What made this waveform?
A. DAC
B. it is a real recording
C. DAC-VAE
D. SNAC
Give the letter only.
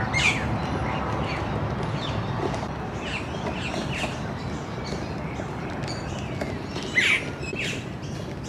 B